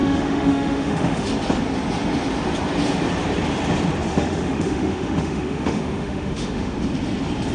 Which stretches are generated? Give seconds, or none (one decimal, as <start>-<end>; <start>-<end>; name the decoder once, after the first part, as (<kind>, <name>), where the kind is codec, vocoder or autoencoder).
0.0-1.3 (autoencoder, DAC-VAE); 4.1-6.7